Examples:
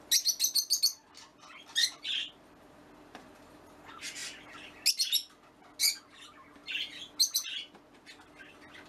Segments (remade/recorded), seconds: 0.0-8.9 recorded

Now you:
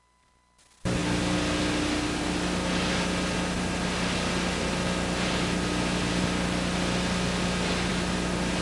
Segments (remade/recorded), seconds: 0.0-8.6 recorded

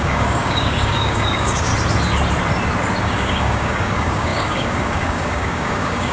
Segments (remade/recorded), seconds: 0.0-1.7 remade; 1.7-3.0 recorded; 3.0-6.1 remade

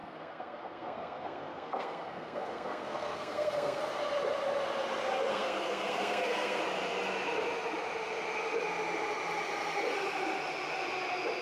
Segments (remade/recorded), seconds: 0.0-3.8 remade; 3.8-5.3 recorded; 5.3-6.6 remade; 6.6-11.4 recorded

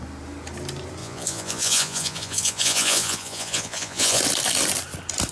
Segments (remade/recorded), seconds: 0.0-1.0 recorded; 1.0-4.2 remade; 4.2-5.3 recorded